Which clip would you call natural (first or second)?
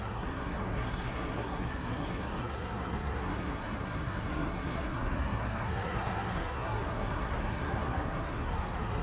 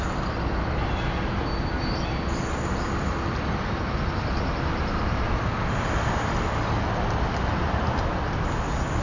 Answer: second